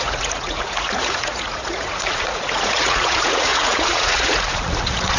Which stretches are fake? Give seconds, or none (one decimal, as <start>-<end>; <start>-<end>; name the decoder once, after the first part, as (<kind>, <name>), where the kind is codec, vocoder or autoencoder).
0.0-5.2 (vocoder, Vocos)